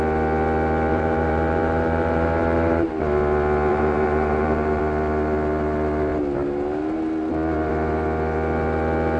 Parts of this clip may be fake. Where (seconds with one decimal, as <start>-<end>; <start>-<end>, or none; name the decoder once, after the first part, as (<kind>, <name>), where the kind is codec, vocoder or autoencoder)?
0.9-2.9 (vocoder, BigVGAN v2); 3.7-4.8